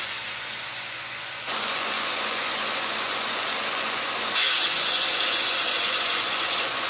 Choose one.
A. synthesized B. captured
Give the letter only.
A